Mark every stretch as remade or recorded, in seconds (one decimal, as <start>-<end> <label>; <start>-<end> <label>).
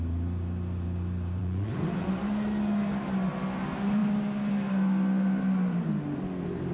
0.0-1.4 recorded; 1.4-2.1 remade; 2.1-6.7 recorded